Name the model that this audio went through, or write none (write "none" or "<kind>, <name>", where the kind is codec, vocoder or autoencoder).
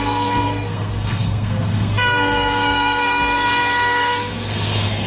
codec, SNAC